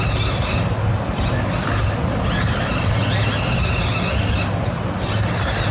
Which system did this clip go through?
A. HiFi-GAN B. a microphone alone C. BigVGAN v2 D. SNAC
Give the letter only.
B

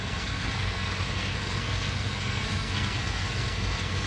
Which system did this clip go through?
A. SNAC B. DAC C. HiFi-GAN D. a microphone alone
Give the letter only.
A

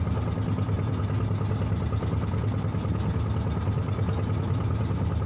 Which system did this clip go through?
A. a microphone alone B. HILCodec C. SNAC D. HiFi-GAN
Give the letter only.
A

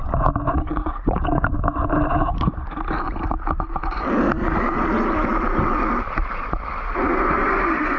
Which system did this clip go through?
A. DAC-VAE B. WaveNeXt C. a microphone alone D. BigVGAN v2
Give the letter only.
C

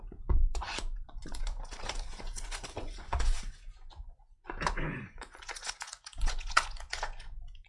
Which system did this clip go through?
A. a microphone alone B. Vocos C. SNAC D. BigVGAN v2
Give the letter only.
B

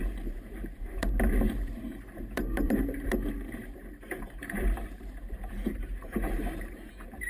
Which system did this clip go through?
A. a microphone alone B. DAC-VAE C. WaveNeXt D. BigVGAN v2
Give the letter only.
D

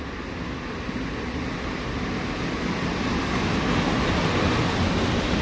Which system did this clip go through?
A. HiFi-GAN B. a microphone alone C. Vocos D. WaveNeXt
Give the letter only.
B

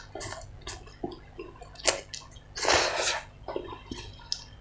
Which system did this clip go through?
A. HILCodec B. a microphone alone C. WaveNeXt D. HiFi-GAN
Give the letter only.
B